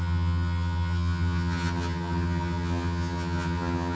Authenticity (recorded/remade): remade